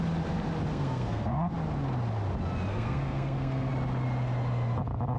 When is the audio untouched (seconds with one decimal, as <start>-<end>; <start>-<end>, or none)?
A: 0.0-0.7; 1.5-2.7; 3.7-5.2